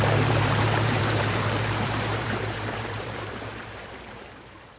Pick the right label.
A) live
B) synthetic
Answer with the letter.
B